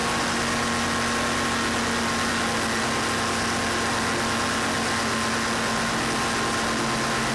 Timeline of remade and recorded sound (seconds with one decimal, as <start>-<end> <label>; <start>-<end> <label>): 0.0-7.3 recorded